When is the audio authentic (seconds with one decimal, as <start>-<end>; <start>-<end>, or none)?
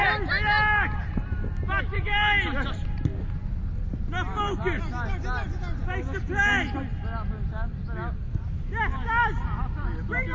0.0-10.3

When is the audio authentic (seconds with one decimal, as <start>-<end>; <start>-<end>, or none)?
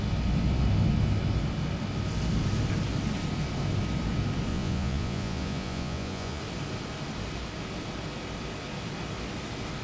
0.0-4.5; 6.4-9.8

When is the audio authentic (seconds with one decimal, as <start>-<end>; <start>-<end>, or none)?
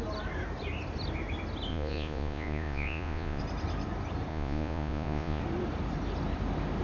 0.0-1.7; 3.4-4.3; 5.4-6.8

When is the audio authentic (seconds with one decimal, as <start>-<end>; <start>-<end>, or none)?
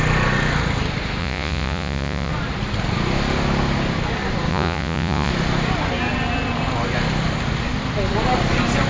0.0-1.2; 2.3-4.5; 5.3-8.9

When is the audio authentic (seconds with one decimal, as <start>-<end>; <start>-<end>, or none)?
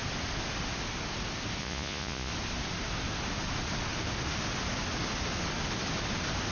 0.0-1.6; 2.3-6.5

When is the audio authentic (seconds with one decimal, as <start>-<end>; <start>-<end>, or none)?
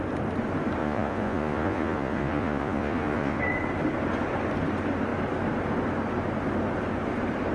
0.0-0.8; 3.4-7.5